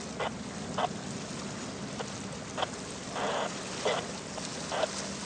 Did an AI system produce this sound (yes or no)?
no